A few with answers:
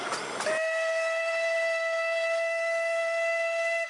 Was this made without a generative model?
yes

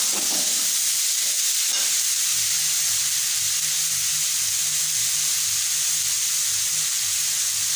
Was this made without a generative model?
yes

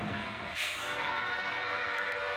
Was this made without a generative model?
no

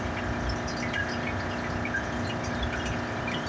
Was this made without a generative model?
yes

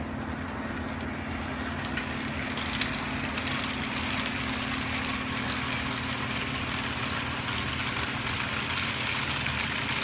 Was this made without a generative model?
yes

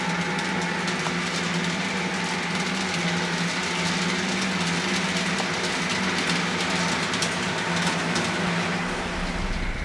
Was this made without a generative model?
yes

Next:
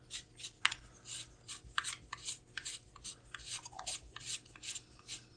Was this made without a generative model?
yes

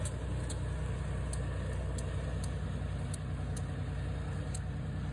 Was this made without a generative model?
yes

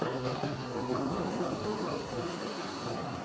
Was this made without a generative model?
no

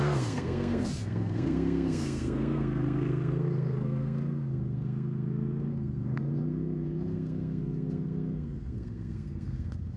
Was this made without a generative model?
no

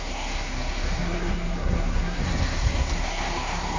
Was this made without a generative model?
no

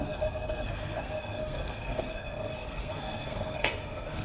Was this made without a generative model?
no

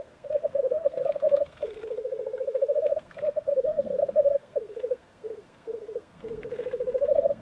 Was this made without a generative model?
no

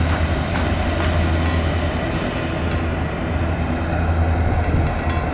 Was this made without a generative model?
yes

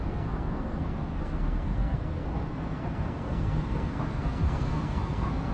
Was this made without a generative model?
no